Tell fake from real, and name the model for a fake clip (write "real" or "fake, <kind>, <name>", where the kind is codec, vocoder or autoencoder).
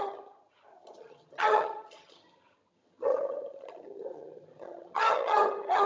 fake, vocoder, HiFi-GAN